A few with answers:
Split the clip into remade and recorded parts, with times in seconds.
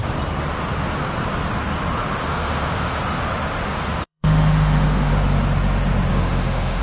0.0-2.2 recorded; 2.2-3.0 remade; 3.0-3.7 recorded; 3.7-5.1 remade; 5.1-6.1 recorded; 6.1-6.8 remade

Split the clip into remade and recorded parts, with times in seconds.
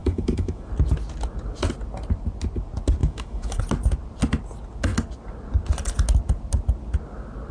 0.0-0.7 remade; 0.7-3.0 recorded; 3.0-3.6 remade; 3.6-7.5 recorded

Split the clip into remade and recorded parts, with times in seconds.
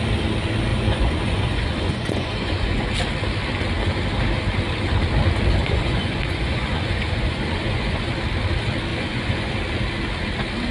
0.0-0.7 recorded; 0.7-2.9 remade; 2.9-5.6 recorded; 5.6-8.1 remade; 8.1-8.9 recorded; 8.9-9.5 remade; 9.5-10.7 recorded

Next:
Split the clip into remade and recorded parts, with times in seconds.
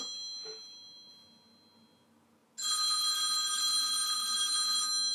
0.0-5.1 recorded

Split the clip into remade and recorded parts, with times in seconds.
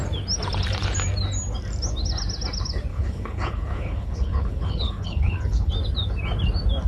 0.0-2.9 recorded; 2.9-5.7 remade; 5.7-6.9 recorded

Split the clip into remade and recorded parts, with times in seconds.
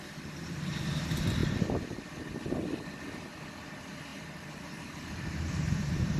0.0-4.1 recorded; 4.1-6.2 remade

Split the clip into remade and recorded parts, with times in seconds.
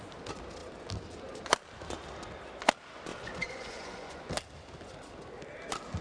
0.0-3.1 recorded; 3.1-4.3 remade; 4.3-6.0 recorded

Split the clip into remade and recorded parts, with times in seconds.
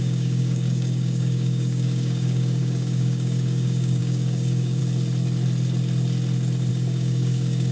0.0-4.8 remade; 4.8-6.7 recorded; 6.7-7.7 remade